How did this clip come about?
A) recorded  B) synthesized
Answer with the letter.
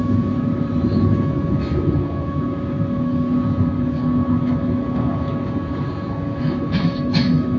B